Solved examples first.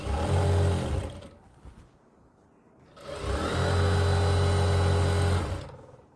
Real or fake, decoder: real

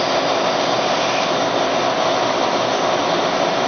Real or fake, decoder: real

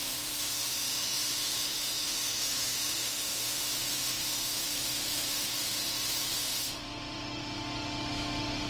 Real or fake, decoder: fake, autoencoder, DAC-VAE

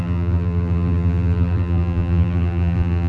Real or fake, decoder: fake, vocoder, BigVGAN v2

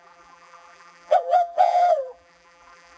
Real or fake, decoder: fake, vocoder, BigVGAN v2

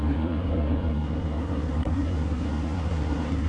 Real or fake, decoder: fake, codec, SNAC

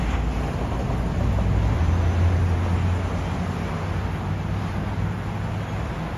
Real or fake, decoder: real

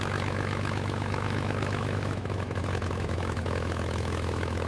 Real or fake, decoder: fake, autoencoder, DAC-VAE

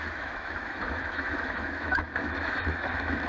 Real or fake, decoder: fake, autoencoder, DAC-VAE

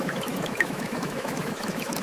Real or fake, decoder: fake, autoencoder, DAC-VAE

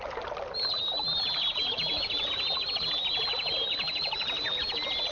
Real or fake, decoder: real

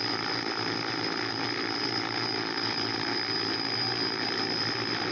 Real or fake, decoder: real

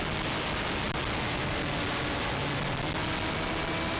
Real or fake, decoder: real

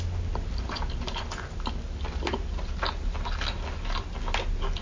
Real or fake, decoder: real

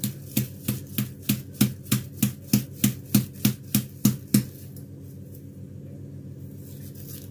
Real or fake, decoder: real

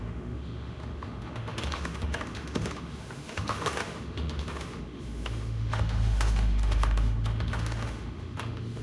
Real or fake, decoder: fake, autoencoder, DAC-VAE